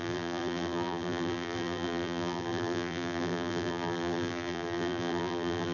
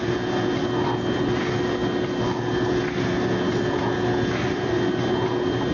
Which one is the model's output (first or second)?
first